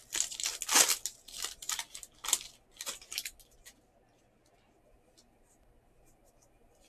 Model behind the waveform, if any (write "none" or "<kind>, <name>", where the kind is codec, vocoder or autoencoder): none